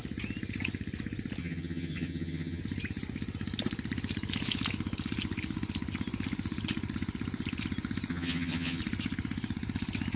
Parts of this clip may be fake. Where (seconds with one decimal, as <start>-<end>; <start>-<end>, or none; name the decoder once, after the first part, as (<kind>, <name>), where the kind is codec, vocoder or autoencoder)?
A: 1.4-2.6 (vocoder, HiFi-GAN); 8.1-8.8